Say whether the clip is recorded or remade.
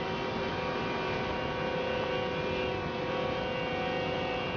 recorded